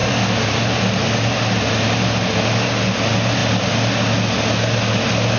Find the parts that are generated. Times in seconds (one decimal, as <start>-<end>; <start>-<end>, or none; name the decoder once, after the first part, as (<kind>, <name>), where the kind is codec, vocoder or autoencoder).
none